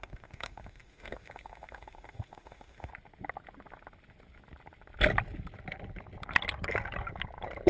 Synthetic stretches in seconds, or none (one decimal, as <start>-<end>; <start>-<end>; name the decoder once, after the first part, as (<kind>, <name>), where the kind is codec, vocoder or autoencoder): 0.0-2.9 (autoencoder, DAC-VAE)